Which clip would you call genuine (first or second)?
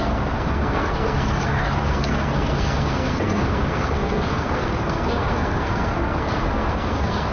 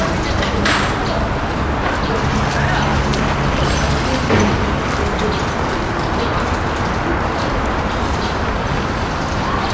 second